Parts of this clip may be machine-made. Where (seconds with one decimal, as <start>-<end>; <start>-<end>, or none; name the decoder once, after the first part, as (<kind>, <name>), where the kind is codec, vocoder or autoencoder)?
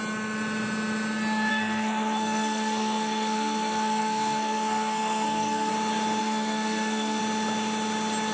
1.5-5.7 (codec, SNAC); 6.2-7.2